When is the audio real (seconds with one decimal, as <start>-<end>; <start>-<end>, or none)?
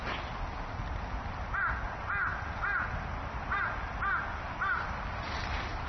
0.0-5.9